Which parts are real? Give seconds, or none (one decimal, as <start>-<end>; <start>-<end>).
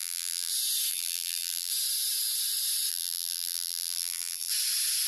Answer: 0.5-0.9; 1.7-2.9; 4.5-5.1